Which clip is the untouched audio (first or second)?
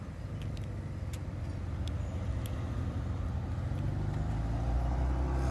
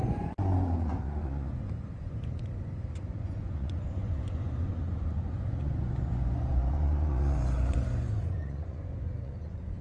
first